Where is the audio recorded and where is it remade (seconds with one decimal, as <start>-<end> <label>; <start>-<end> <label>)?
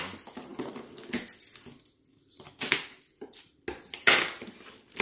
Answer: 0.0-5.0 recorded